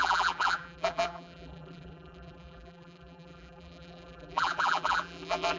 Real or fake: fake